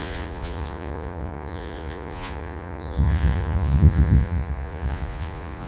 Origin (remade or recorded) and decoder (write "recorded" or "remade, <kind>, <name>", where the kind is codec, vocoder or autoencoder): remade, vocoder, Vocos